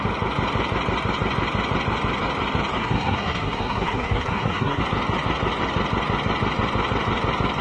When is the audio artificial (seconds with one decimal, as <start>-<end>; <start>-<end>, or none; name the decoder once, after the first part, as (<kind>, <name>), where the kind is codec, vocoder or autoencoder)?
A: 2.8-4.8 (codec, SNAC)